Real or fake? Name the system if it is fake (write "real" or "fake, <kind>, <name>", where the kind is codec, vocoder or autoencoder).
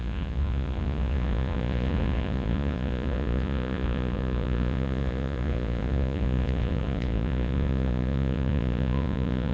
fake, vocoder, Vocos